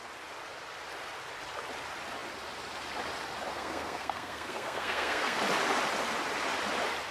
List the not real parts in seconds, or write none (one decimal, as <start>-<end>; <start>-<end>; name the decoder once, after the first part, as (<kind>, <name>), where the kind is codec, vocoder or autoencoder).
3.5-5.4 (codec, SNAC)